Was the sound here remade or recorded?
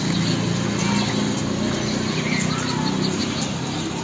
recorded